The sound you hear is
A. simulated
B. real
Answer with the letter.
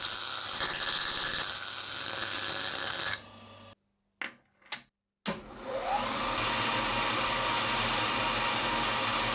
B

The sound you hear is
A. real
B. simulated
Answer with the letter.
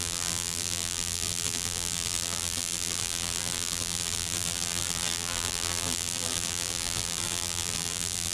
B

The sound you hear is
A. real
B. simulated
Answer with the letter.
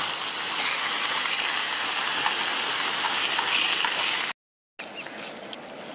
A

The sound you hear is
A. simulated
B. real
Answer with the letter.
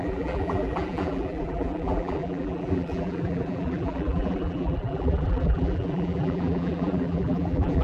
A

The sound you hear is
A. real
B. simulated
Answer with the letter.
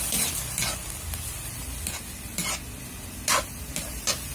A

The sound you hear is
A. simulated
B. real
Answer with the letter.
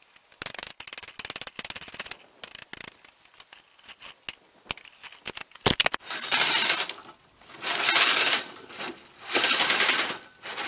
B